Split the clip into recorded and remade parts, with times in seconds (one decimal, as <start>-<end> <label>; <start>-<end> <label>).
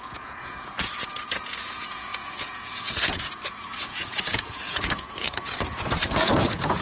0.0-6.8 remade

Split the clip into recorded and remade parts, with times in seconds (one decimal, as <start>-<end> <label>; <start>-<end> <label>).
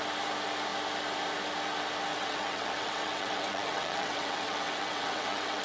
0.0-2.1 recorded; 2.1-5.6 remade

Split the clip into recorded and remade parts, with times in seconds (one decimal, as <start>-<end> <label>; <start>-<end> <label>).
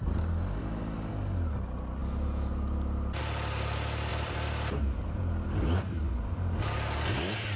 0.0-0.6 recorded; 0.6-1.1 remade; 1.1-4.1 recorded; 4.1-6.1 remade; 6.1-7.6 recorded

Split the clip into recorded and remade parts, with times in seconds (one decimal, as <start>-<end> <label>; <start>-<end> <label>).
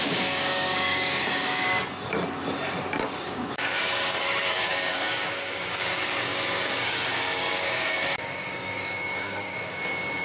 0.0-1.8 remade; 1.8-3.2 recorded; 3.2-10.2 remade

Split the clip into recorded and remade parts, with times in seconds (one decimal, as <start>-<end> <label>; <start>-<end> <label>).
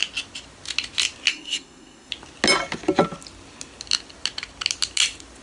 0.0-1.3 recorded; 1.3-2.1 remade; 2.1-5.4 recorded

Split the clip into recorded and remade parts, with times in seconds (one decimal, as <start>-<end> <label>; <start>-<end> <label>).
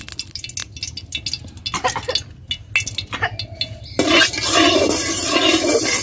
0.0-6.0 recorded